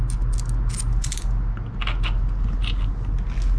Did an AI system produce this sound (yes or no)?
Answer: no